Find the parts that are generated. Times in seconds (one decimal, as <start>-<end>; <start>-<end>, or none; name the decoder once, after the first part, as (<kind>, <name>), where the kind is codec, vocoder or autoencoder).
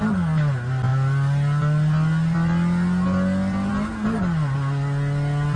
none